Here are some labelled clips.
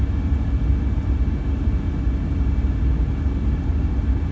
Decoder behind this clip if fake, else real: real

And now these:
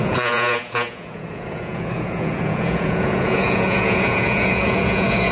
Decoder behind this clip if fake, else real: fake, vocoder, Vocos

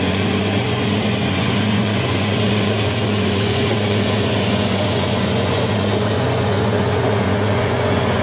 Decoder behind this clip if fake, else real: fake, vocoder, Vocos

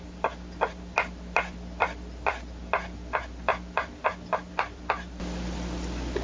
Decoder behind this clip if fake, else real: real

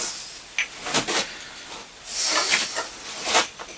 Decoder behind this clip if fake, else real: real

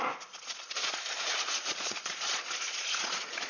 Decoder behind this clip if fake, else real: fake, vocoder, Vocos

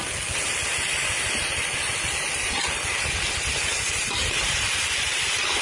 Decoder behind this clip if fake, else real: real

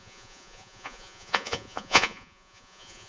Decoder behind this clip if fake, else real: fake, vocoder, Vocos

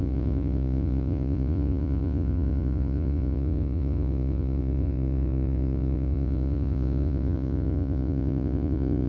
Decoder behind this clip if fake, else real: fake, vocoder, Vocos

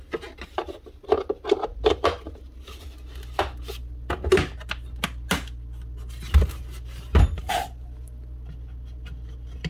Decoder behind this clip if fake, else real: real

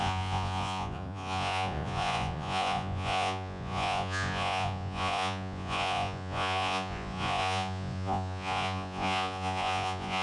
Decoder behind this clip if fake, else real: fake, vocoder, Vocos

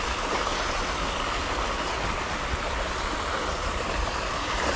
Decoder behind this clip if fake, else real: real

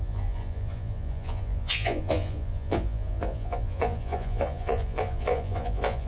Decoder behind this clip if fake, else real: fake, vocoder, Vocos